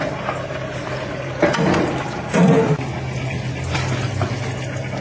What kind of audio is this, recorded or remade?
recorded